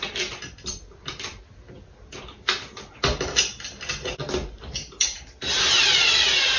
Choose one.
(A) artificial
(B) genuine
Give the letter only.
B